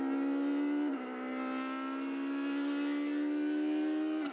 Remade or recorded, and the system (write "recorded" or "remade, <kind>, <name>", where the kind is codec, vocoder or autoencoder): recorded